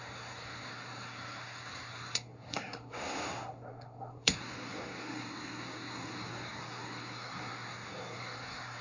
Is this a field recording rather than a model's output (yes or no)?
no